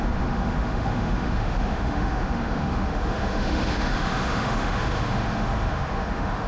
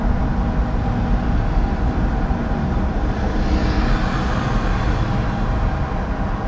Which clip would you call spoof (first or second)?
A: first